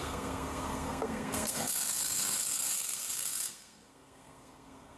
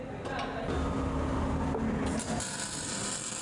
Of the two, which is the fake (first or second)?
first